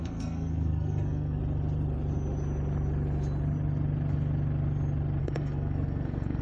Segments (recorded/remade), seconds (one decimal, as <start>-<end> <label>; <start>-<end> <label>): 0.0-1.4 remade; 1.4-5.2 recorded; 5.2-6.4 remade